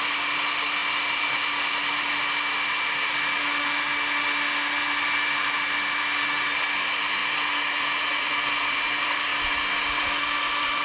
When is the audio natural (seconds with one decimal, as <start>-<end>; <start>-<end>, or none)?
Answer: 7.2-7.8; 9.3-10.0